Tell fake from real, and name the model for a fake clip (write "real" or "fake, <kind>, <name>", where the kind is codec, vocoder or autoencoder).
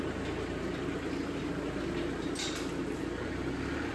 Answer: real